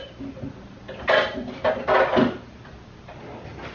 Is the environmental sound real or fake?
real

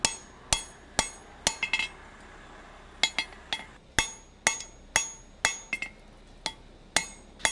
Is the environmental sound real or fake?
real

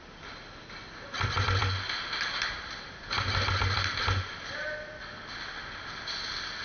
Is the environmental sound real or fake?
real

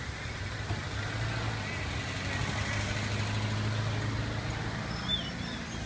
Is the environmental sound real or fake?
real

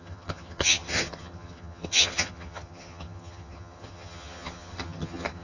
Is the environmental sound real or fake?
fake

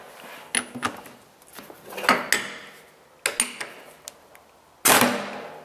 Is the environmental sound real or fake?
real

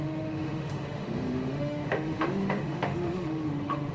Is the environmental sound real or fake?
fake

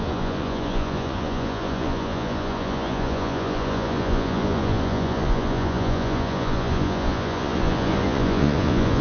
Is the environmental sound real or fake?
fake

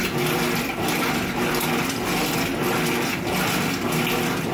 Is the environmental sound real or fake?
real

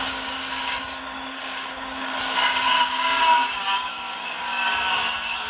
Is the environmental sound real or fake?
fake